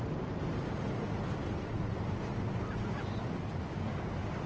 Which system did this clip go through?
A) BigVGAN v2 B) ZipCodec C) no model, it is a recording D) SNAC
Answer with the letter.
C